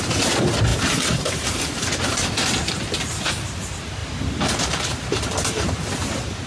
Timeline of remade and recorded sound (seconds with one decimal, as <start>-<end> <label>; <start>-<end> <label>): 0.0-6.5 recorded